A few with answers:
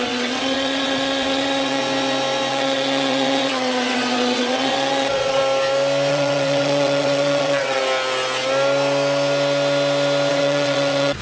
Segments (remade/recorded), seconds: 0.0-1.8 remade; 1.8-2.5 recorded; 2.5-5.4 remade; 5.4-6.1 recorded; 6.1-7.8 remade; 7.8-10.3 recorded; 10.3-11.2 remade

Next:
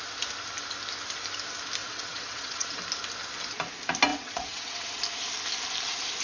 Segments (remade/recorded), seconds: 0.0-1.8 recorded; 1.8-2.8 remade; 2.8-4.1 recorded; 4.1-5.0 remade; 5.0-6.2 recorded

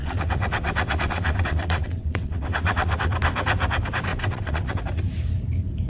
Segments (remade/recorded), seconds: 0.0-3.1 remade; 3.1-4.1 recorded; 4.1-4.8 remade; 4.8-5.9 recorded

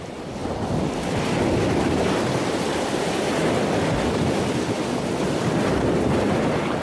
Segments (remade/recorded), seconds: 0.0-6.8 recorded

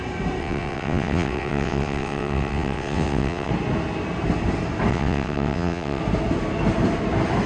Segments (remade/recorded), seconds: 0.0-0.4 recorded; 0.4-3.5 remade; 3.5-4.9 recorded; 4.9-6.0 remade; 6.0-7.5 recorded